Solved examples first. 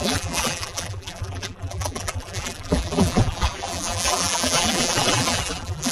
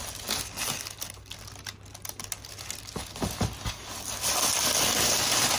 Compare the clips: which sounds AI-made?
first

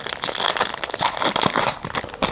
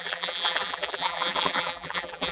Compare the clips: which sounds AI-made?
second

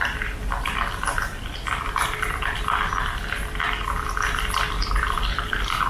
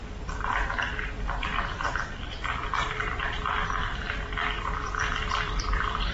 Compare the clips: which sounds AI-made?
second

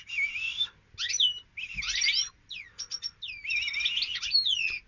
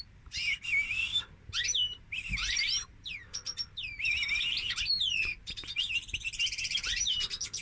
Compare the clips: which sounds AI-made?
second